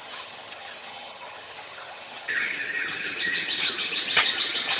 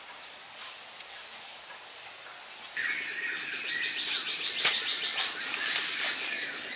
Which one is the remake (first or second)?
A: first